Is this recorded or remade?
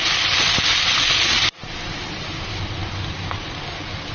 recorded